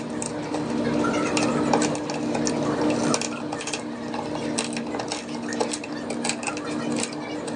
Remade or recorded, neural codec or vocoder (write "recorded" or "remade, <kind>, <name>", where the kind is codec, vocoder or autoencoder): recorded